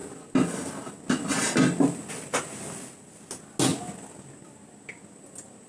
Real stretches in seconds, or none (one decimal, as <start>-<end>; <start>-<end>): 0.0-5.7